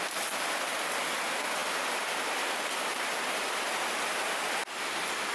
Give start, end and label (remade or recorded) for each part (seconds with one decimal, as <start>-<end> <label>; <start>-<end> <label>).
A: 0.0-5.3 recorded

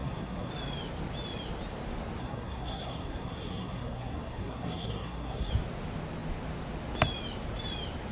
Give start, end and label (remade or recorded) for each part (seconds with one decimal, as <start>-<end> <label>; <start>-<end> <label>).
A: 0.0-0.5 remade; 0.5-2.2 recorded; 2.2-5.5 remade; 5.5-8.1 recorded

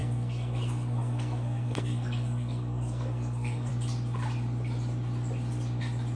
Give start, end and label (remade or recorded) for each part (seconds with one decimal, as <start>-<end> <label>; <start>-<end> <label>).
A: 0.0-3.7 remade; 3.7-6.2 recorded

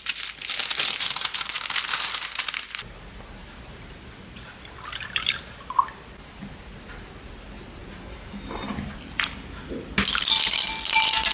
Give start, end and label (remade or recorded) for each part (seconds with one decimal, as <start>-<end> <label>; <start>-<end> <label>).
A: 0.0-11.3 recorded

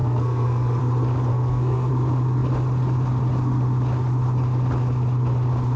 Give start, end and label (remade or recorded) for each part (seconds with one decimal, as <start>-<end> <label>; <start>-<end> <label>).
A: 0.0-0.8 remade; 0.8-1.3 recorded; 1.3-1.9 remade; 1.9-5.8 recorded

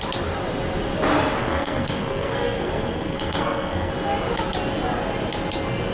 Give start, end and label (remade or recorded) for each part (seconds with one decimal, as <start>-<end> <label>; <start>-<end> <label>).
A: 0.0-1.4 recorded; 1.4-3.9 remade; 3.9-5.9 recorded

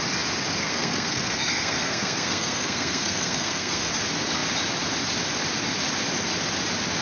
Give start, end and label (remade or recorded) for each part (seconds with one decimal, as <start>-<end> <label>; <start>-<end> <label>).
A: 0.0-0.6 recorded; 0.6-3.9 remade; 3.9-7.0 recorded

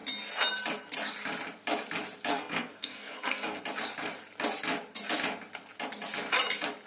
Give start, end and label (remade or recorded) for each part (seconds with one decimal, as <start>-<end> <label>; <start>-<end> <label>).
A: 0.0-2.3 recorded; 2.3-3.6 remade; 3.6-6.9 recorded